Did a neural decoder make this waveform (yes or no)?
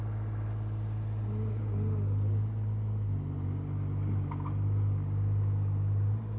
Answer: no